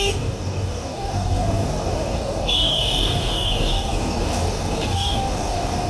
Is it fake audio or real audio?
fake